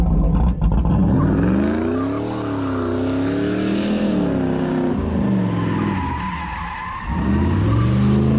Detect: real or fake real